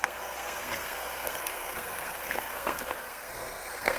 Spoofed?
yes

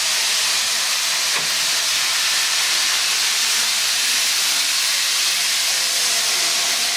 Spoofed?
no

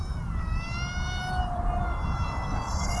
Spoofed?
no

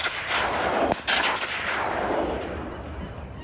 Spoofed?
no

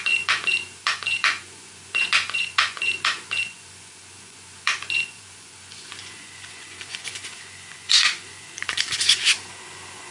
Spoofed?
yes